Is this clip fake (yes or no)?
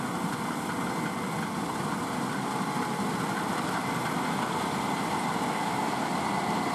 no